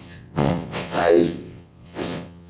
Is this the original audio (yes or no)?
no